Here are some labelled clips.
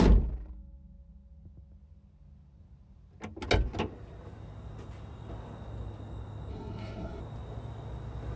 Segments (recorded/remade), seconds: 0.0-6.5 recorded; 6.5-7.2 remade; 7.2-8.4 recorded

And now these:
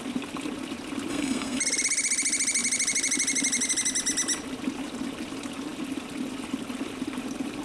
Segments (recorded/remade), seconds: 0.0-1.1 recorded; 1.1-1.6 remade; 1.6-7.6 recorded

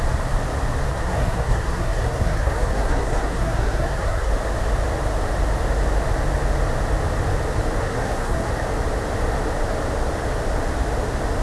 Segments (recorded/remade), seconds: 0.0-0.9 recorded; 0.9-4.3 remade; 4.3-7.8 recorded; 7.8-8.5 remade; 8.5-11.4 recorded

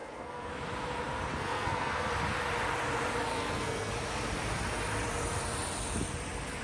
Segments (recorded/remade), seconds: 0.0-0.5 remade; 0.5-1.3 recorded; 1.3-2.1 remade; 2.1-3.3 recorded; 3.3-3.9 remade; 3.9-6.6 recorded

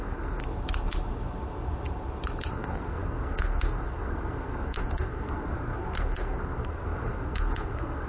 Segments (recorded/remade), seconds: 0.0-0.4 remade; 0.4-2.5 recorded; 2.5-8.1 remade

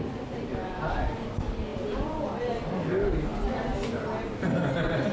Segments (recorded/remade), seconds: 0.0-5.1 recorded

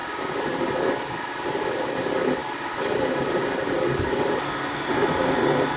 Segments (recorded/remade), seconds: 0.0-5.8 recorded

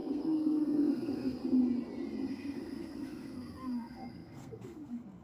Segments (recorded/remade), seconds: 0.0-1.4 remade; 1.4-2.3 recorded; 2.3-5.2 remade